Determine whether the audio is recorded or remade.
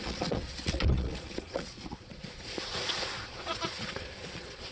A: remade